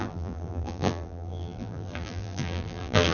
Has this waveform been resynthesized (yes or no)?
yes